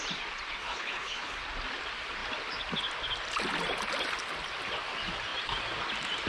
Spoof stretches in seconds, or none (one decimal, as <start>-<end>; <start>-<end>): 0.6-1.4